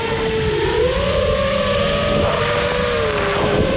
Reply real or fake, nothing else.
real